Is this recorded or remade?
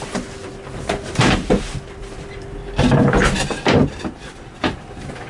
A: remade